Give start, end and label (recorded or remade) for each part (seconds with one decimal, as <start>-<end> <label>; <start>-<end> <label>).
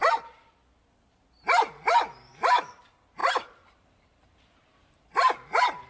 0.0-3.2 recorded; 3.2-4.7 remade; 4.7-5.9 recorded